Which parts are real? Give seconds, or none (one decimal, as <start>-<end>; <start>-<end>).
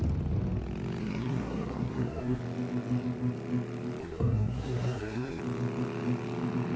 0.0-1.0; 2.4-4.0; 5.4-6.8